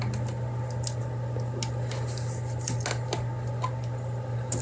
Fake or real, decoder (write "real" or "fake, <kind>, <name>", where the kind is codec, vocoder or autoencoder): real